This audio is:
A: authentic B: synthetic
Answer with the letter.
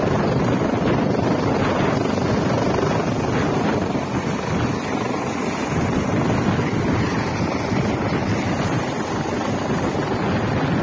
A